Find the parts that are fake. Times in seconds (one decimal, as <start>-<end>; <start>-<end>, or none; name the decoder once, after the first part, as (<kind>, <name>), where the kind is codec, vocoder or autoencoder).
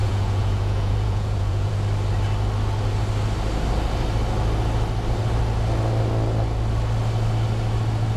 0.0-1.7 (vocoder, Vocos)